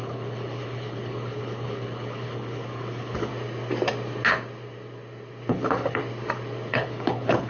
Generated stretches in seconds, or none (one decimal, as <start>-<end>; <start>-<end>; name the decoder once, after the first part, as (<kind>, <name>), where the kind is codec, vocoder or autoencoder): 0.0-3.3 (codec, HILCodec); 5.5-6.0; 6.7-7.5